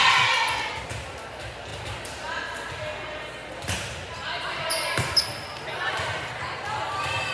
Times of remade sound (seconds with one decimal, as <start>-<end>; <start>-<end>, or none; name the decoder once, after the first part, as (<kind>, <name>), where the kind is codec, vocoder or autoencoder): none